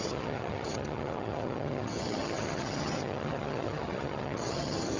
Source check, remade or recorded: remade